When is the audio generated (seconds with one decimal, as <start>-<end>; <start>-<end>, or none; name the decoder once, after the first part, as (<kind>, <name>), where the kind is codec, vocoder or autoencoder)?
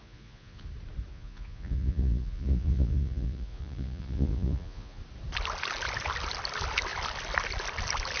0.0-0.7 (vocoder, Vocos); 1.1-5.0